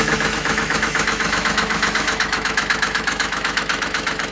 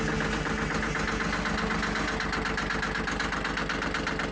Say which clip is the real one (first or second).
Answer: second